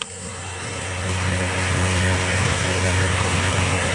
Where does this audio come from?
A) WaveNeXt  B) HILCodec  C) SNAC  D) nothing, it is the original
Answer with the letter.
C